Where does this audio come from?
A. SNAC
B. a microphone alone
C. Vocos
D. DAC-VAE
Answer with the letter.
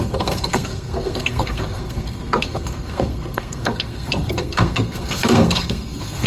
A